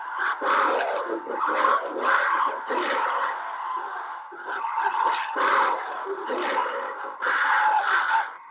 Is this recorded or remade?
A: recorded